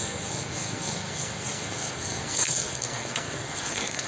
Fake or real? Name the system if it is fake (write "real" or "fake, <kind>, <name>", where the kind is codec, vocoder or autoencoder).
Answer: fake, codec, SNAC